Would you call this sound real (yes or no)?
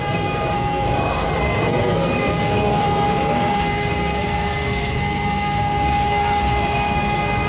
no